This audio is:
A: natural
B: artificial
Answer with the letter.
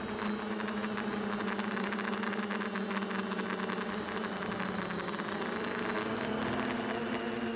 A